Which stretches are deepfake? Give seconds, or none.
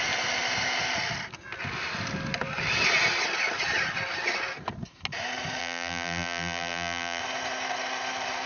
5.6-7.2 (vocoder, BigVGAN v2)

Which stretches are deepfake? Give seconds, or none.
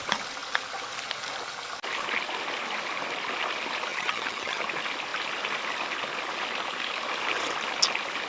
3.9-4.6 (vocoder, HiFi-GAN)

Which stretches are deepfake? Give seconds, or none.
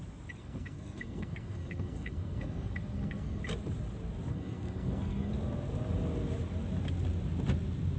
0.4-3.4 (codec, SNAC); 4.3-5.3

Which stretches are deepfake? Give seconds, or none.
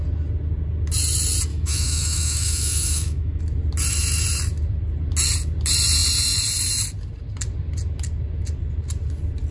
1.5-3.4 (autoencoder, DAC-VAE)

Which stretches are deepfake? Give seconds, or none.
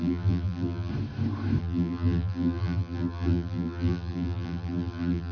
0.0-0.9 (vocoder, BigVGAN v2); 1.6-5.3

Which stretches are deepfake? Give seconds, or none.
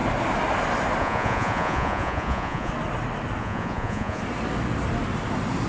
1.0-2.7 (vocoder, Vocos); 3.4-4.2